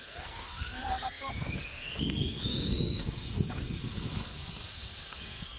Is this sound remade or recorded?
remade